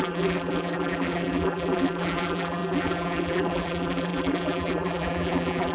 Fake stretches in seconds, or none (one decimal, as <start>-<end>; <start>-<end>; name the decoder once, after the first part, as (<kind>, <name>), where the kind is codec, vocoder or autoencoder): 0.0-5.7 (vocoder, BigVGAN v2)